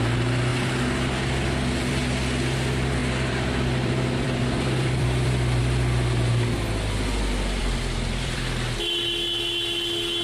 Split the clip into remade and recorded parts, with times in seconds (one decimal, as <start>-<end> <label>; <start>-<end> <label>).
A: 0.0-3.0 recorded; 3.0-5.6 remade; 5.6-7.6 recorded; 7.6-8.4 remade; 8.4-10.2 recorded